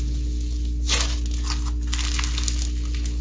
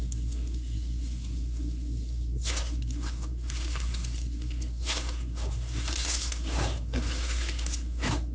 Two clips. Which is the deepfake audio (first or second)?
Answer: second